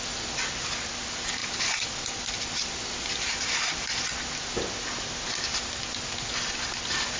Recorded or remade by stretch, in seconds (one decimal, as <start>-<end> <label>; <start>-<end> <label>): 0.0-7.2 recorded

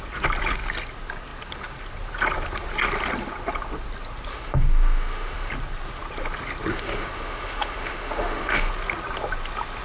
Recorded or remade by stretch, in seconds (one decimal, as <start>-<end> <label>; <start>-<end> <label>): 0.0-4.3 recorded; 4.3-5.5 remade; 5.5-6.7 recorded; 6.7-8.7 remade; 8.7-9.8 recorded